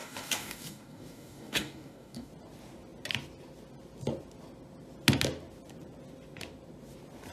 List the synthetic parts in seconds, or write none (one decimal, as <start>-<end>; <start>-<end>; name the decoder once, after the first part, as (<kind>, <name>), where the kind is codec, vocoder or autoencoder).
0.0-2.3 (codec, DAC)